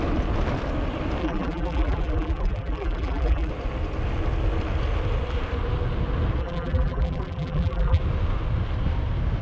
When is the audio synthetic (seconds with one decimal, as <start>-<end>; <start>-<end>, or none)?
1.2-3.5; 6.4-8.0